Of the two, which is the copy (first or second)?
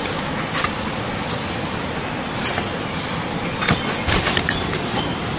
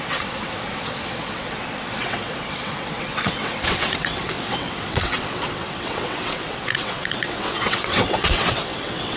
second